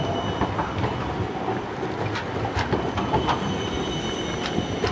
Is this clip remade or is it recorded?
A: recorded